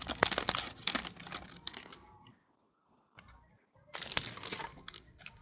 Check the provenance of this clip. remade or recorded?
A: recorded